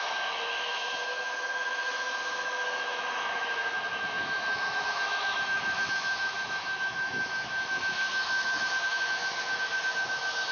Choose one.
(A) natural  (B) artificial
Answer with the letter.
B